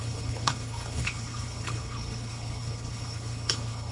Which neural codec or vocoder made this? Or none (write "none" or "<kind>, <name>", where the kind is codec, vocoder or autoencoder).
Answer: codec, HILCodec